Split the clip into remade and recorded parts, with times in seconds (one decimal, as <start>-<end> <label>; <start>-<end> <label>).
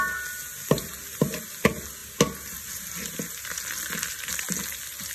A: 0.0-5.1 recorded